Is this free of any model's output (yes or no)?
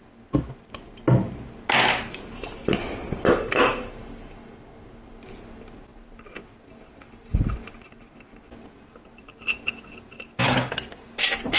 yes